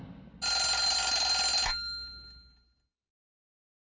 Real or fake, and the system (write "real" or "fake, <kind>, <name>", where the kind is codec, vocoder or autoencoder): real